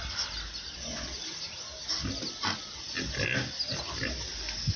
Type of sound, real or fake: real